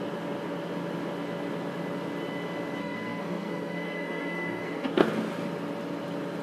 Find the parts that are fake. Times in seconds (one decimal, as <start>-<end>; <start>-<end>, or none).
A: 2.8-5.1